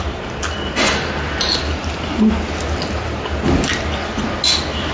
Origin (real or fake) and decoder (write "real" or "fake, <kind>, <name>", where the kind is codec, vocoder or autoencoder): real